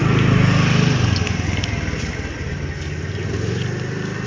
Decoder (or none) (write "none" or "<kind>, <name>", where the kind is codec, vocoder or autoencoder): none